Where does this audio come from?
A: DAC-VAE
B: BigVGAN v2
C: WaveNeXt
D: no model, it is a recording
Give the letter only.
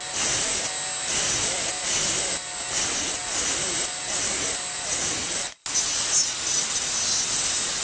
D